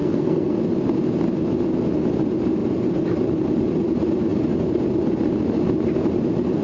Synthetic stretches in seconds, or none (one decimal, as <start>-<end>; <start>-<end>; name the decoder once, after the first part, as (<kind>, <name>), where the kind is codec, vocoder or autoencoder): 0.0-0.6 (codec, SNAC)